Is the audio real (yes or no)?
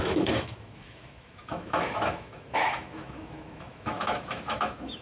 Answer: no